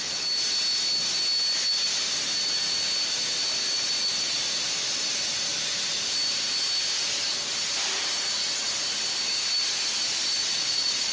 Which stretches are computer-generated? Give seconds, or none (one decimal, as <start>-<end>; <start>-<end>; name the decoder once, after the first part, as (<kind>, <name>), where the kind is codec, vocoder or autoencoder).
10.4-11.1 (vocoder, Vocos)